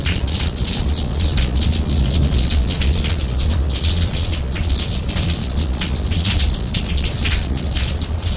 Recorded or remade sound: remade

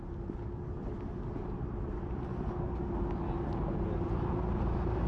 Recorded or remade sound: recorded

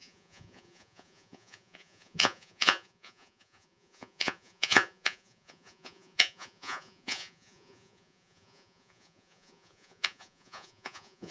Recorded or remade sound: remade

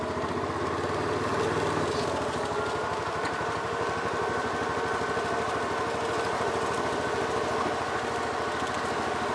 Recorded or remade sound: recorded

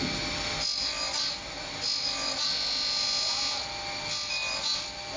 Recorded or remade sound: recorded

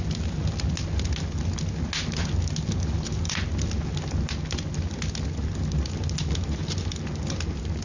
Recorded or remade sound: recorded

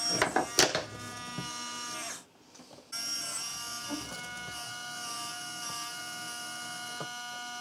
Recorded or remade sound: recorded